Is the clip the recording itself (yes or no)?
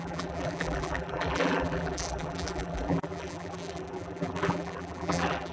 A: no